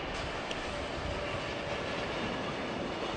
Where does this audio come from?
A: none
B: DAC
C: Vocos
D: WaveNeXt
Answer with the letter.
A